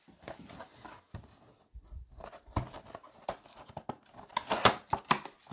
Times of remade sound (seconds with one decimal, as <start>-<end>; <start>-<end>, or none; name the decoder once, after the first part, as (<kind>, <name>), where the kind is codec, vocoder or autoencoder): none